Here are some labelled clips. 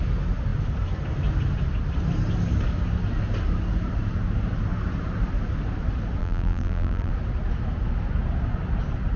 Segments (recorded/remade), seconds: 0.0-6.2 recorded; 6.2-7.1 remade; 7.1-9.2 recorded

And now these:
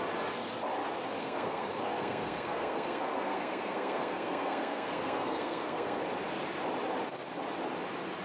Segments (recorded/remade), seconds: 0.0-1.2 recorded; 1.2-6.0 remade; 6.0-8.2 recorded

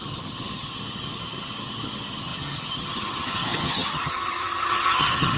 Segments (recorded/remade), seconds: 0.0-5.4 remade

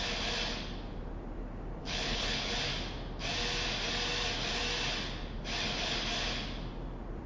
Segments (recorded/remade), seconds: 0.0-1.8 recorded; 1.8-2.4 remade; 2.4-7.3 recorded

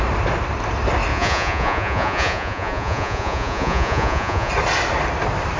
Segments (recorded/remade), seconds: 0.0-1.1 recorded; 1.1-4.5 remade; 4.5-5.6 recorded

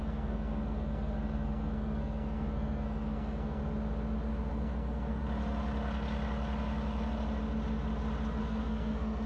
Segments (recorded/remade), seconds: 0.0-3.6 remade; 3.6-4.5 recorded; 4.5-5.2 remade; 5.2-8.4 recorded; 8.4-9.3 remade